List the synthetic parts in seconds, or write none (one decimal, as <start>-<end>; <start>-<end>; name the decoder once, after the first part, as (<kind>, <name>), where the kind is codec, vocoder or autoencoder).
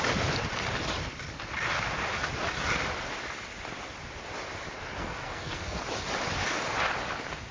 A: 5.0-5.8 (codec, SNAC)